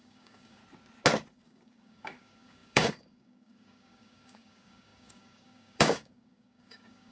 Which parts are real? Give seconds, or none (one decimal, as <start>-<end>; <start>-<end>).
0.6-1.3